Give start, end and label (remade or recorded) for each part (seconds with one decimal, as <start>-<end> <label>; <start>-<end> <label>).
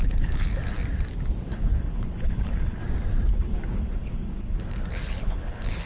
0.0-0.5 remade; 0.5-1.5 recorded; 1.5-2.8 remade; 2.8-3.3 recorded; 3.3-5.9 remade